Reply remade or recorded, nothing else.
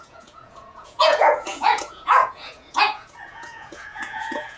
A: remade